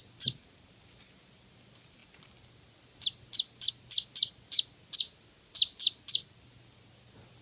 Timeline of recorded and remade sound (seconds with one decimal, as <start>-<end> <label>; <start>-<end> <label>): 0.0-7.4 recorded